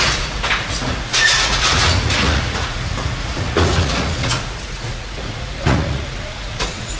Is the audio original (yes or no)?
no